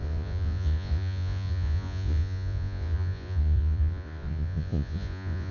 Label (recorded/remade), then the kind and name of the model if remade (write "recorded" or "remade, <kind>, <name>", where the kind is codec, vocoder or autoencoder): remade, vocoder, Vocos